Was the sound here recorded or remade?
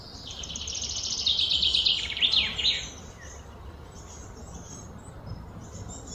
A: remade